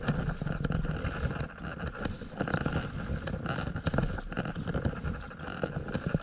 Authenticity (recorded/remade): recorded